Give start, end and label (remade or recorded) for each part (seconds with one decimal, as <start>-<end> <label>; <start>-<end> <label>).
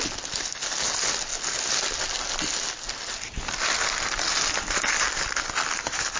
0.0-6.2 recorded